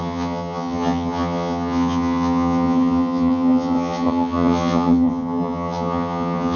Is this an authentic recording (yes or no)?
no